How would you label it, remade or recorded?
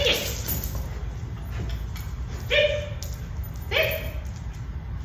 recorded